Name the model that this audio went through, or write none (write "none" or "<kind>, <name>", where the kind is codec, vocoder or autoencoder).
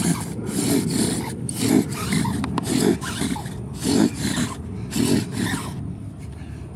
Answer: vocoder, BigVGAN v2